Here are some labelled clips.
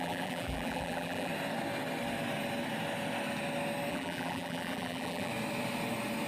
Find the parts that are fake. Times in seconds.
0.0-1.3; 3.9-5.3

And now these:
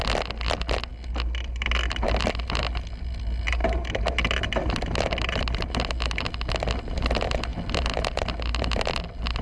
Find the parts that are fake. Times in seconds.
none